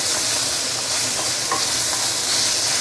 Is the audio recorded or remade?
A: recorded